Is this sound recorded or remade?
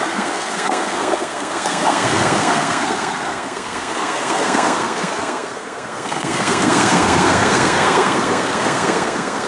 remade